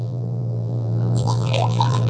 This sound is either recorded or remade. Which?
remade